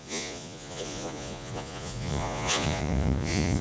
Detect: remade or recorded remade